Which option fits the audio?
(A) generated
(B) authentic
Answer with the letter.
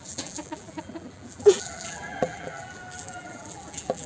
A